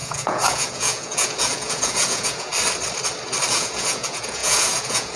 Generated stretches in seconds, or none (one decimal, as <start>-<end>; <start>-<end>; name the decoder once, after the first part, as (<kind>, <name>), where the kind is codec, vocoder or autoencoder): 0.0-2.5 (vocoder, Vocos); 3.5-5.2